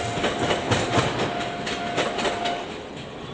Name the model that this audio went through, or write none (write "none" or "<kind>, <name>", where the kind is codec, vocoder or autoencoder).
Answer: none